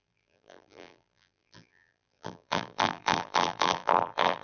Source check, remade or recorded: remade